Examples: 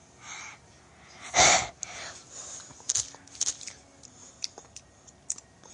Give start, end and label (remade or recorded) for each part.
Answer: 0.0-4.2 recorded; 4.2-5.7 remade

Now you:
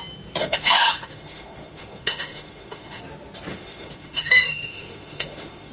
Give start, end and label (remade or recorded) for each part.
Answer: 0.0-0.4 recorded; 0.4-3.0 remade; 3.0-3.5 recorded; 3.5-5.7 remade

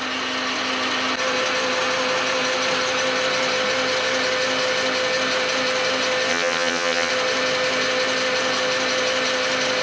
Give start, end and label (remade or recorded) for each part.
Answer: 0.0-6.3 recorded; 6.3-7.1 remade; 7.1-9.8 recorded

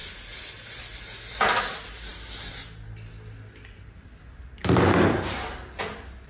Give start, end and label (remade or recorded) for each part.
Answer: 0.0-6.3 recorded

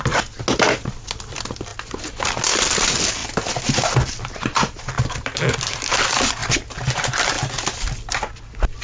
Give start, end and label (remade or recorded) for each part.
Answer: 0.0-3.2 recorded; 3.2-4.8 remade; 4.8-8.8 recorded

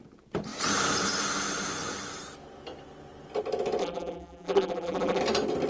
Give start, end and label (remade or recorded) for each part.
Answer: 0.0-3.8 recorded; 3.8-5.2 remade; 5.2-5.7 recorded

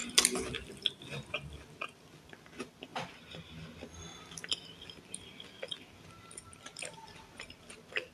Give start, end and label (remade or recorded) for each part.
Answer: 0.0-0.7 remade; 0.7-8.1 recorded

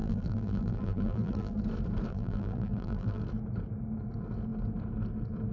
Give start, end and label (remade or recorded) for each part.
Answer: 0.0-1.6 remade; 1.6-2.1 recorded; 2.1-3.2 remade; 3.2-5.5 recorded